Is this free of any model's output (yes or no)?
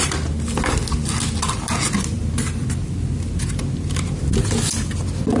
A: yes